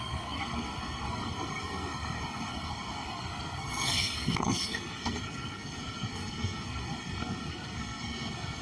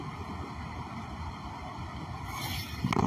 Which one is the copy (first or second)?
first